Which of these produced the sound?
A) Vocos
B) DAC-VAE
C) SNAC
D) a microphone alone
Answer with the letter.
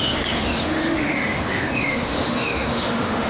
B